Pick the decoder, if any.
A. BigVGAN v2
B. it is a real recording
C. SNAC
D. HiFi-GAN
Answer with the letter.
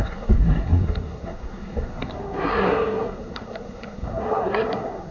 C